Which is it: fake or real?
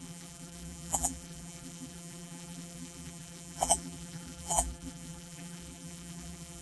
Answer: fake